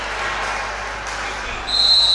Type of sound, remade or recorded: recorded